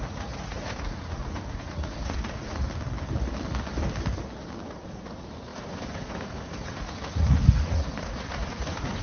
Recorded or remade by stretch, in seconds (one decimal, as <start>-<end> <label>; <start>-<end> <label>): 0.0-2.6 remade; 2.6-4.6 recorded; 4.6-9.0 remade